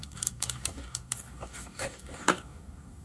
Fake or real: fake